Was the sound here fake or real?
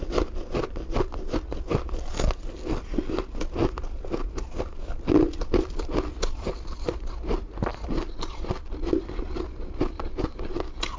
real